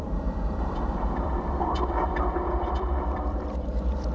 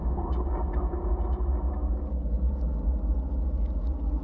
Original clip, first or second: second